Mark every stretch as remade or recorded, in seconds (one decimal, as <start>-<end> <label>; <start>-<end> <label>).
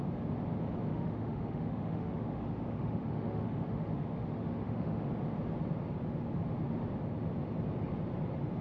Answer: 0.0-0.9 recorded; 0.9-5.1 remade; 5.1-8.6 recorded